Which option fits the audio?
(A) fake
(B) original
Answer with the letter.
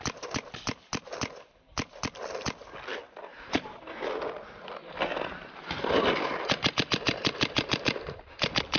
B